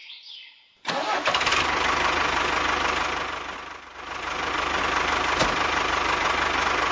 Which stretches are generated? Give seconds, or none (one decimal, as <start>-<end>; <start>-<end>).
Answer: 0.0-0.9